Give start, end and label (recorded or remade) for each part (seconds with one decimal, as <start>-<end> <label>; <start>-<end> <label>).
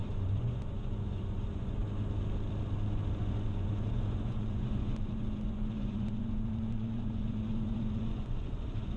0.0-1.8 remade; 1.8-3.2 recorded; 3.2-9.0 remade